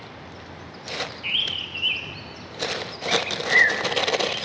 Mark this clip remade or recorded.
recorded